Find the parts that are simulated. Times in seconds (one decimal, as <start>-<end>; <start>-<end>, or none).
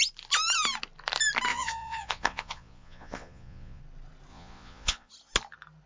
1.5-3.8; 4.3-5.1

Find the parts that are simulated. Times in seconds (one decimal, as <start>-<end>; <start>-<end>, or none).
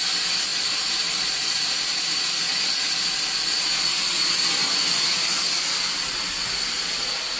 0.5-2.2